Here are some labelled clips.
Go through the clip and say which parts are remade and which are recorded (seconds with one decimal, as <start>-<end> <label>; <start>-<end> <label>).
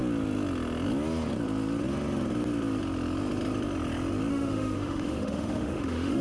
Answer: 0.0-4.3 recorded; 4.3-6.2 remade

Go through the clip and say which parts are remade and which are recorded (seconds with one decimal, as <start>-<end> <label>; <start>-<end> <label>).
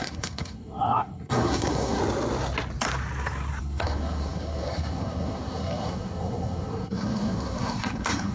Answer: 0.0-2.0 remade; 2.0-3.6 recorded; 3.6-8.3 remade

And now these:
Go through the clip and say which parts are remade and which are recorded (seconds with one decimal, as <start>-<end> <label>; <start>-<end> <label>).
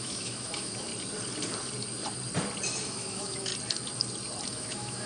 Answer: 0.0-0.9 remade; 0.9-2.8 recorded; 2.8-3.5 remade; 3.5-4.5 recorded; 4.5-5.1 remade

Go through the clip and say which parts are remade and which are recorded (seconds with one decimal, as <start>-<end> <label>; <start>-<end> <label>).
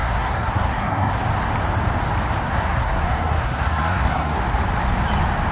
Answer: 0.0-1.1 remade; 1.1-2.4 recorded; 2.4-4.4 remade; 4.4-5.5 recorded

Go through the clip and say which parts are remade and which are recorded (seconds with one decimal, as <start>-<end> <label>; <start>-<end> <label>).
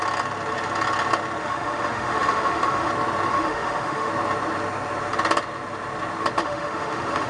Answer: 0.0-1.4 recorded; 1.4-2.9 remade; 2.9-3.3 recorded; 3.3-4.1 remade; 4.1-6.4 recorded; 6.4-7.3 remade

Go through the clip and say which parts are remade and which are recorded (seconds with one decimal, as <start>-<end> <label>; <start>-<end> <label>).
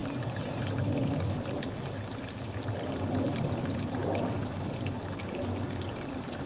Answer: 0.0-6.5 recorded